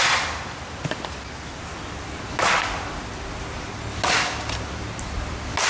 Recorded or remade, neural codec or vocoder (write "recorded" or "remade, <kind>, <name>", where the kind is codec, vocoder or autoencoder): recorded